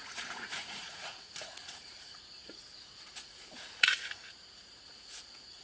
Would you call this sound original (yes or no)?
no